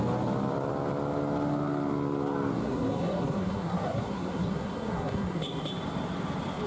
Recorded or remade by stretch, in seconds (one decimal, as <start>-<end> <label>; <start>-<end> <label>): 0.0-2.6 recorded; 2.6-5.7 remade; 5.7-6.7 recorded